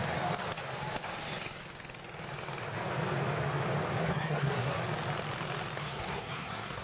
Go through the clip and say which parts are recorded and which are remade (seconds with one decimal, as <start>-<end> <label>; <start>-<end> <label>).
0.0-4.0 recorded; 4.0-4.8 remade; 4.8-5.8 recorded; 5.8-6.8 remade